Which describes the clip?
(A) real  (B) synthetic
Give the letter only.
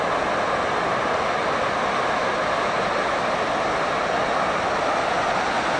A